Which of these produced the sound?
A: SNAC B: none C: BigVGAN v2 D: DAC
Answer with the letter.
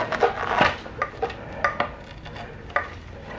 B